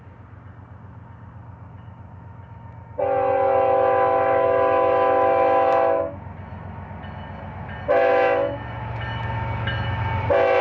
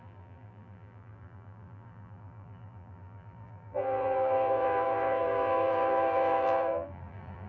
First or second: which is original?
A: first